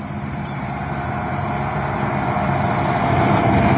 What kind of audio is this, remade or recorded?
recorded